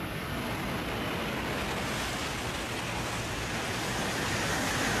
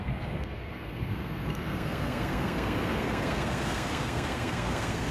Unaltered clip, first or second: first